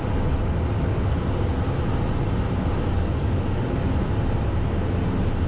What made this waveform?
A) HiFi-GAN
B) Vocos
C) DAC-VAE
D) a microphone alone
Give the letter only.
D